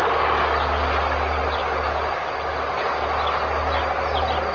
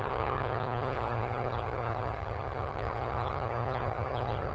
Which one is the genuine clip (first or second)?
first